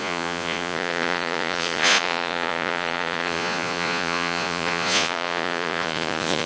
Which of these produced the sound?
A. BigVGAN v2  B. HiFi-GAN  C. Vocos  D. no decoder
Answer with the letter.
C